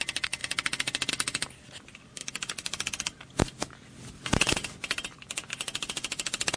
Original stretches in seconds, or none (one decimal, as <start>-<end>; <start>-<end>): 0.0-6.6